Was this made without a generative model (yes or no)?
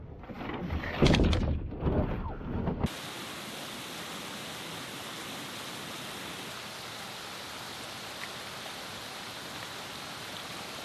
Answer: yes